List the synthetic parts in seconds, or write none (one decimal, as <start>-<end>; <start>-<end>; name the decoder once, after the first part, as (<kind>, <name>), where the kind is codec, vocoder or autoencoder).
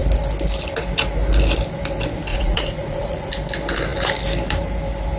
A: 2.3-3.3 (vocoder, Vocos)